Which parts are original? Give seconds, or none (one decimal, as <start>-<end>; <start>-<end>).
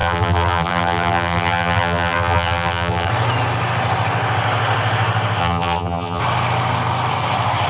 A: 3.1-5.4; 6.2-7.7